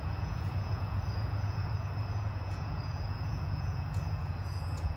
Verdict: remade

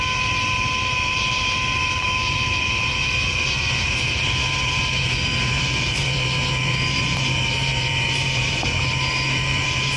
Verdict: remade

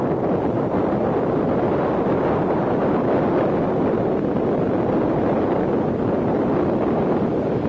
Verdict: recorded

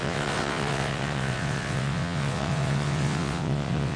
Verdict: remade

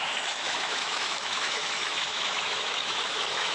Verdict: remade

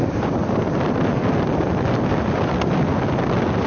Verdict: recorded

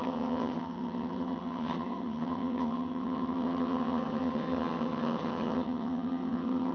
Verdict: remade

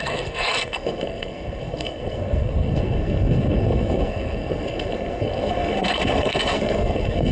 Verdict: remade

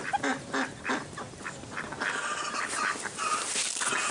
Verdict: recorded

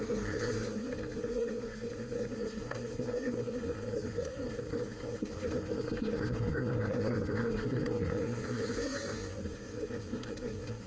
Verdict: remade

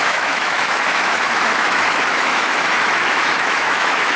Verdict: remade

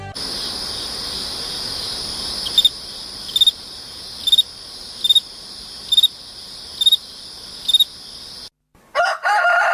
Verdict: recorded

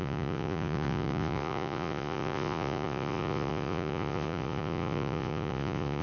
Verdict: remade